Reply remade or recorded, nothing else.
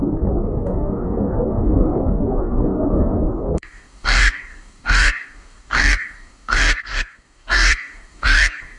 remade